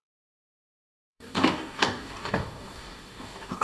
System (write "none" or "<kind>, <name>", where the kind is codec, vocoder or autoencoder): codec, DAC